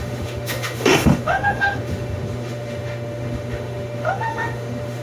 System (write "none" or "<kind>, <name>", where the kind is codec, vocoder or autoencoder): autoencoder, DAC-VAE